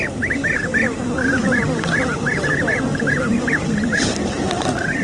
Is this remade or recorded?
recorded